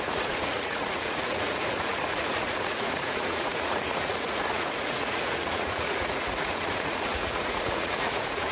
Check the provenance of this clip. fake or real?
fake